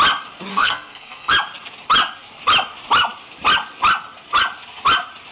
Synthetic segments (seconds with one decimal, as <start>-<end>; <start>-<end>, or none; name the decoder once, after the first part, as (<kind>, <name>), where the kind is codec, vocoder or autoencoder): 0.5-1.3 (codec, SNAC)